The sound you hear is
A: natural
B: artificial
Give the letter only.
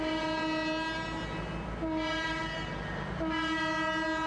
A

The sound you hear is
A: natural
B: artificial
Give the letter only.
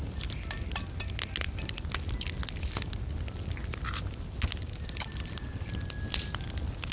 A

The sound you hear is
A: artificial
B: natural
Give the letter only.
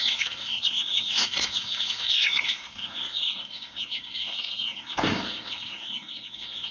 A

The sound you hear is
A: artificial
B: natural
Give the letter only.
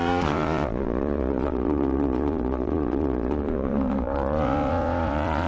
A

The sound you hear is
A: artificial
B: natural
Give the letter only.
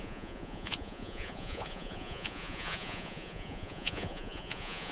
A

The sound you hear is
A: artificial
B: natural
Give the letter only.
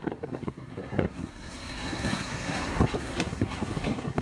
A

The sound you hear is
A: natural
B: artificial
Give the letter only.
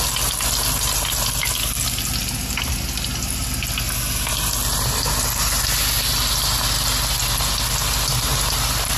A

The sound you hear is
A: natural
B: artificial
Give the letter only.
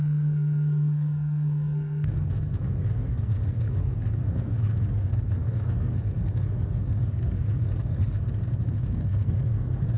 B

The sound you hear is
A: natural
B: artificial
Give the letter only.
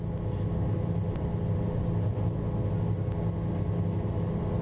A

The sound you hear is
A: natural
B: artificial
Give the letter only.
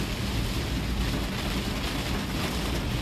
A